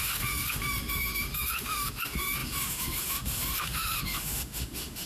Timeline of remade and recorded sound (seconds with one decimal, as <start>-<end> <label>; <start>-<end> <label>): 0.0-5.1 remade